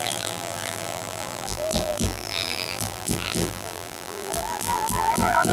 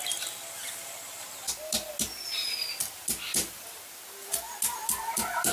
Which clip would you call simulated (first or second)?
first